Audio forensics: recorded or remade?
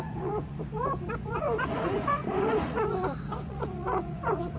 remade